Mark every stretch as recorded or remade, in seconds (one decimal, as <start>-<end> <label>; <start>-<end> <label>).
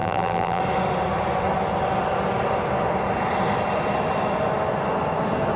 0.0-0.6 remade; 0.6-5.6 recorded